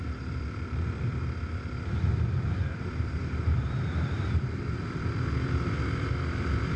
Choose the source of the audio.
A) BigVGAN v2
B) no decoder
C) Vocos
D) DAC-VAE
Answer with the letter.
A